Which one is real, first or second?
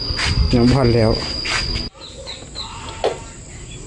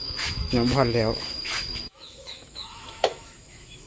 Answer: first